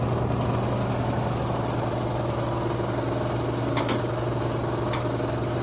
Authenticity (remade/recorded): recorded